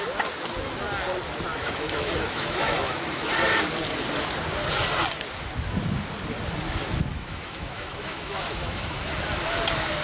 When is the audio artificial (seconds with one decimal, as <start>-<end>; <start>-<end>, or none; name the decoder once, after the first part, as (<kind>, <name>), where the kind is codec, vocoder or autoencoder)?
1.5-3.3 (autoencoder, DAC-VAE); 7.1-9.1